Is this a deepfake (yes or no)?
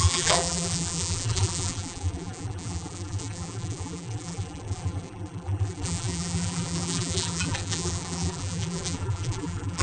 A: yes